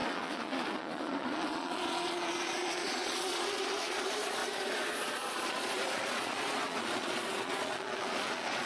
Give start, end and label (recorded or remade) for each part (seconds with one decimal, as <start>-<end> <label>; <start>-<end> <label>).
0.0-8.7 remade